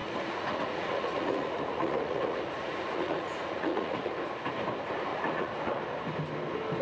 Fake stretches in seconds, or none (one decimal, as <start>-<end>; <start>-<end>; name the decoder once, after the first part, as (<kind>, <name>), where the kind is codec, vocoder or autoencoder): 0.0-4.1 (vocoder, Vocos); 5.1-5.8